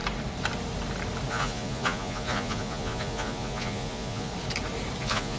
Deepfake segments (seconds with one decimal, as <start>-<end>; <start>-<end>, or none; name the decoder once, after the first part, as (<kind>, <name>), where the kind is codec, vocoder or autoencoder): 1.3-4.3 (vocoder, Vocos); 5.0-5.4